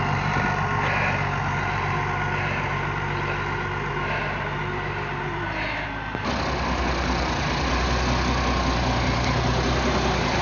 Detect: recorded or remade recorded